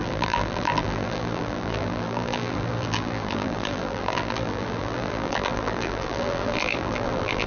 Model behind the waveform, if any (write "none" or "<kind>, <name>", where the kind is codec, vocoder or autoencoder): vocoder, BigVGAN v2